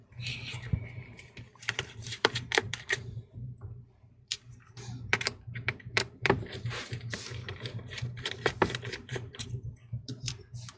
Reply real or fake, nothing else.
fake